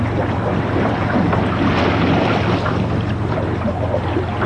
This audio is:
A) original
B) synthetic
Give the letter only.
A